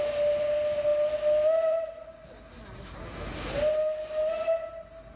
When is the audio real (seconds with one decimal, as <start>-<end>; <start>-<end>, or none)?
0.0-5.2